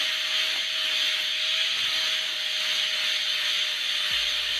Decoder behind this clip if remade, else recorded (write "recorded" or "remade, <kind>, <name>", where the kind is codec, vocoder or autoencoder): recorded